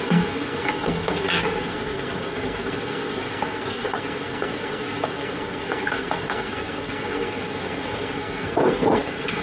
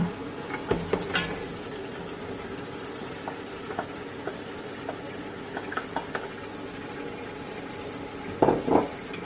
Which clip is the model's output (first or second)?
first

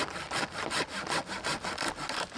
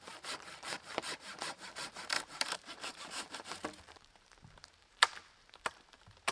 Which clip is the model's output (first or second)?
second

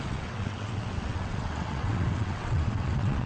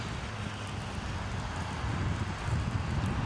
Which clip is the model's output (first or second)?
first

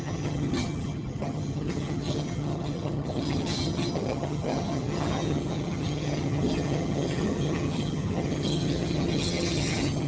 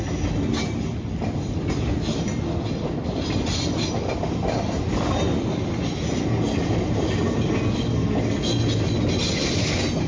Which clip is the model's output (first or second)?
first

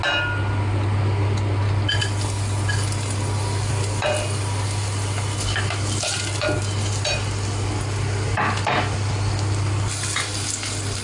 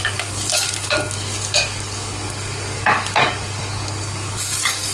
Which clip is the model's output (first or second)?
second